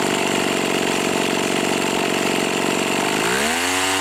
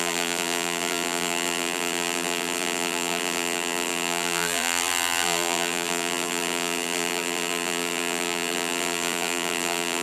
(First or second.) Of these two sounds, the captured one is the first